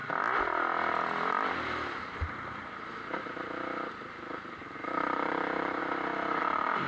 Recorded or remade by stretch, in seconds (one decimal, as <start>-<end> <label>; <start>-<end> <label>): 0.0-4.1 recorded; 4.1-5.8 remade; 5.8-6.4 recorded; 6.4-6.9 remade